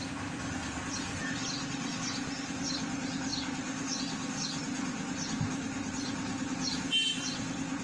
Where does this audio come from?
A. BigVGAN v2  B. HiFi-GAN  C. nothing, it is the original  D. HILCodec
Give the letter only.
C